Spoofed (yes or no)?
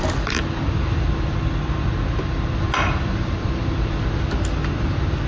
no